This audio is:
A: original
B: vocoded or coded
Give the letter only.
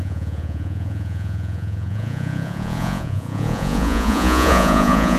B